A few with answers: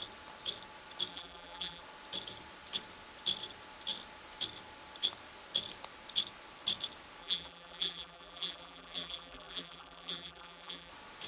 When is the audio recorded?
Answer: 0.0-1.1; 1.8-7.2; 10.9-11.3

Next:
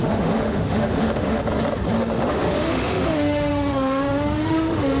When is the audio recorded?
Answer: 1.4-2.0

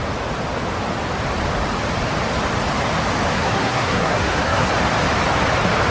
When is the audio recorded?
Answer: 0.0-3.3; 4.7-5.9

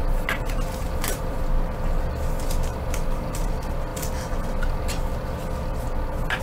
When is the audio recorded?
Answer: 1.4-2.7; 3.5-6.4

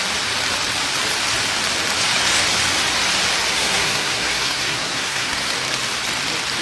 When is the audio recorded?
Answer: 0.0-3.5; 5.5-6.6

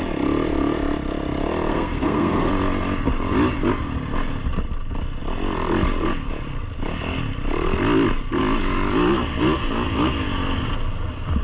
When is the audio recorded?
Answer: 0.0-1.7; 2.5-11.4

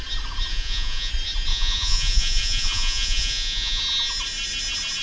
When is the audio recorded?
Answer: 0.0-0.5; 1.1-1.5; 3.8-5.0

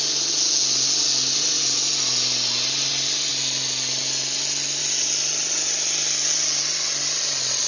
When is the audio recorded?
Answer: 0.0-7.7